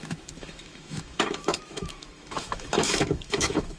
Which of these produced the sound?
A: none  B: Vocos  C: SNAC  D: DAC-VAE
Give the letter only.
D